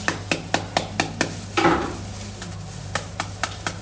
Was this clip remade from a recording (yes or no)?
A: no